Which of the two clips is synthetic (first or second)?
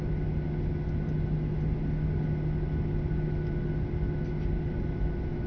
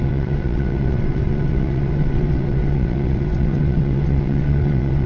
second